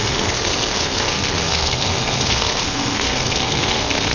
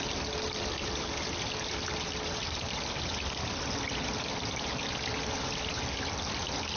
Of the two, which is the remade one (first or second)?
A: first